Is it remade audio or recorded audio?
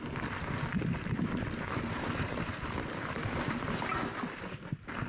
recorded